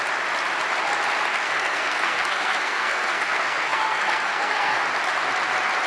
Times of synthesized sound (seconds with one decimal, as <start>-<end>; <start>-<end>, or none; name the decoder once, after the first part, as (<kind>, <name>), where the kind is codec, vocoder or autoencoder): 1.3-4.8 (codec, SNAC)